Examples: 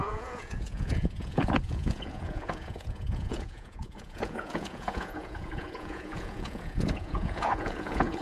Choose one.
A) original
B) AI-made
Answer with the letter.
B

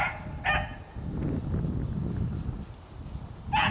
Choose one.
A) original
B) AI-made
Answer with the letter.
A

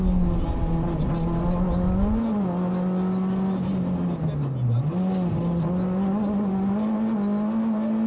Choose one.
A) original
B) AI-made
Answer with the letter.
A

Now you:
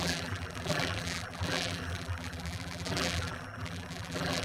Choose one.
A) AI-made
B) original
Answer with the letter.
A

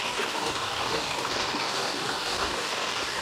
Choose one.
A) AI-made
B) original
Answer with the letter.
A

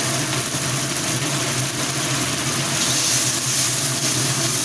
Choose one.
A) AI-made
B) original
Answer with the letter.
B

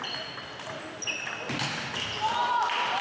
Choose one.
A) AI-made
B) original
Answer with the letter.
B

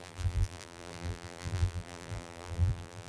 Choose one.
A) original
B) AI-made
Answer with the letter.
B